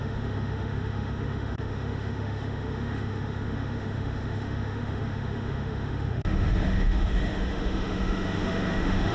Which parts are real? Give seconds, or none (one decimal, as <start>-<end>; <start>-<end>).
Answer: none